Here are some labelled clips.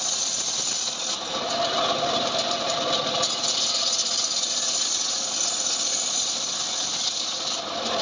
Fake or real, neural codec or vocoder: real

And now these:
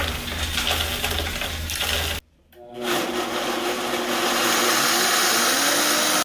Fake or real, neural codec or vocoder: real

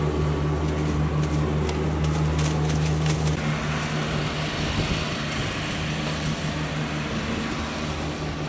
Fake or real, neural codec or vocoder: real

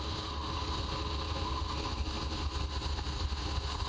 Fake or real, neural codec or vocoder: real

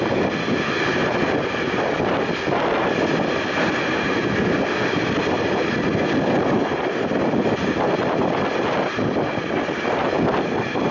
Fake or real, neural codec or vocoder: real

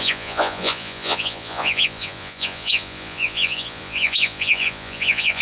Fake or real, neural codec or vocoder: fake, vocoder, Vocos